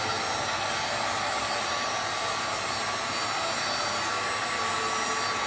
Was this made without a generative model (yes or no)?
yes